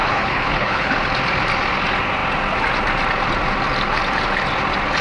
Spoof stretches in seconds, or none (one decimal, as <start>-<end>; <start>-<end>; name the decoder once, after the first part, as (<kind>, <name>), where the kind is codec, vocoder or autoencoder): 0.0-0.9 (codec, HILCodec)

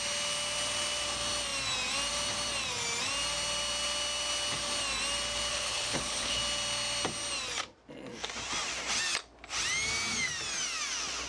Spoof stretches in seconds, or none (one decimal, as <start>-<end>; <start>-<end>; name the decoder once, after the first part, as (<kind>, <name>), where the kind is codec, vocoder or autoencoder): 5.5-6.4 (codec, HILCodec)